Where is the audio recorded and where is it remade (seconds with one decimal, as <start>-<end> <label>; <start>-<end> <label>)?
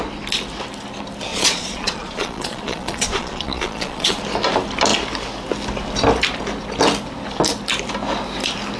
0.0-1.3 recorded; 1.3-4.2 remade; 4.2-8.8 recorded